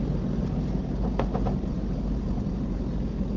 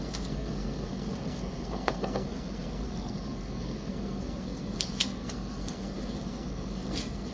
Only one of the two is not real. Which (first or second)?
second